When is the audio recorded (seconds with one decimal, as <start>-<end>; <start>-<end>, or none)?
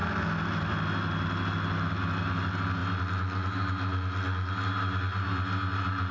0.0-6.1